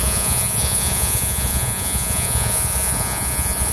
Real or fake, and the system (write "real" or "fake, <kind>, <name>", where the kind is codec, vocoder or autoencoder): fake, vocoder, Vocos